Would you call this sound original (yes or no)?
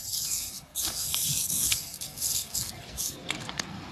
no